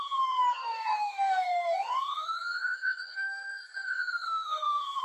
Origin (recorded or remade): remade